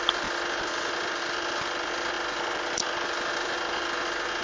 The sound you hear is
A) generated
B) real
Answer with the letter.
B